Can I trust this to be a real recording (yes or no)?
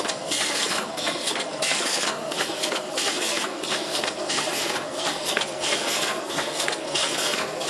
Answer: no